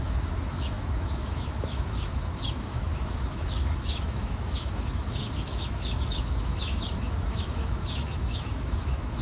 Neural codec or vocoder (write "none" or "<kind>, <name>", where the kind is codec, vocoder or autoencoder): autoencoder, DAC-VAE